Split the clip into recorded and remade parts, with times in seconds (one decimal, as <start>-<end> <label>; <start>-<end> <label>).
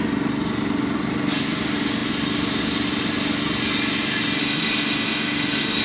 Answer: 0.0-4.4 recorded; 4.4-5.8 remade